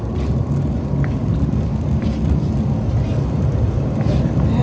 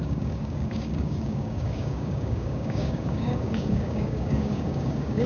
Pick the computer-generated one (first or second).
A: second